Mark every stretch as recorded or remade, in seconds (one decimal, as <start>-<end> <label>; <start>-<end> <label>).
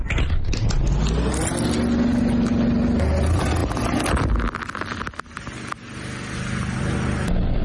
0.0-7.6 recorded